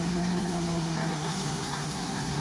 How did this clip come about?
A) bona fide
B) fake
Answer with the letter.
B